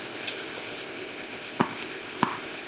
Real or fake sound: fake